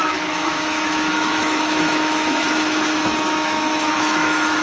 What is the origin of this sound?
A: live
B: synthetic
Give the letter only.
B